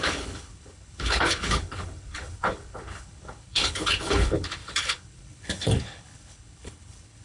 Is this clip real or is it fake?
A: fake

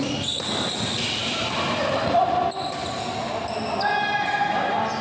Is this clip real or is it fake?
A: real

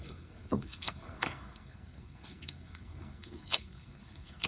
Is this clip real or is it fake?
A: fake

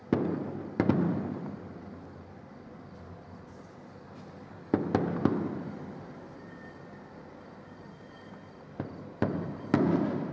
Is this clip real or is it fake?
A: real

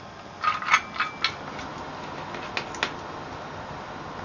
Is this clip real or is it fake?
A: real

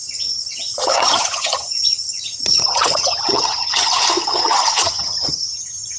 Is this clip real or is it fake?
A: fake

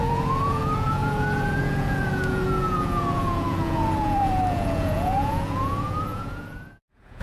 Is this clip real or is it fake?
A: fake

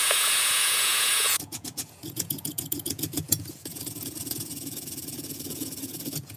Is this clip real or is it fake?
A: fake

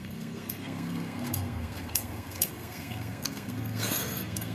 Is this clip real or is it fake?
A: fake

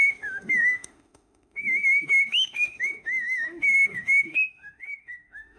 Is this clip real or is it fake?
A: fake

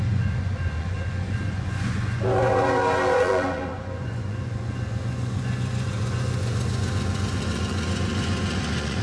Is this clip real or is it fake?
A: fake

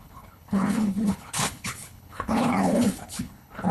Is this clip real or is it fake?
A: fake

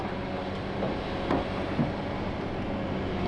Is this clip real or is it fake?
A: real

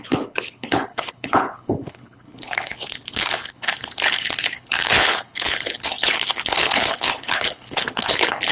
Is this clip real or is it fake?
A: fake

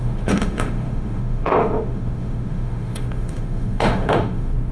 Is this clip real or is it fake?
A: fake